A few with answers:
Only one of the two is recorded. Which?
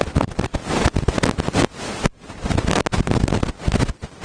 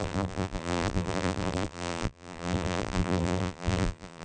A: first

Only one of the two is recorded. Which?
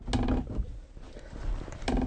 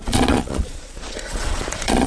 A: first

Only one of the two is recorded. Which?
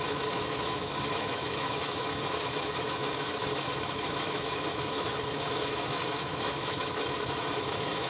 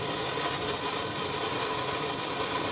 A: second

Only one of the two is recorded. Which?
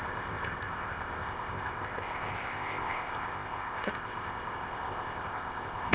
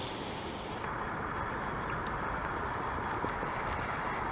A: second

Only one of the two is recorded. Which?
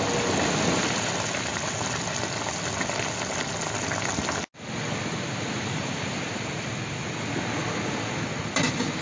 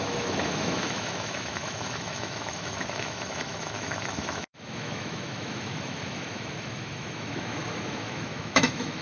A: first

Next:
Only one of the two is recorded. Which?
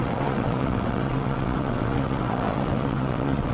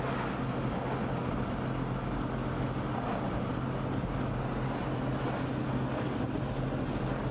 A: second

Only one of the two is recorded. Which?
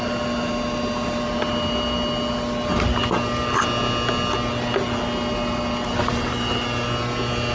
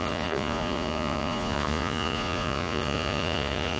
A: first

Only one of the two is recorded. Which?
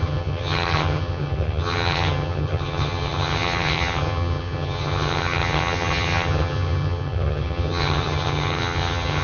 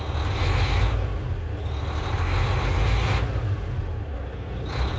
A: second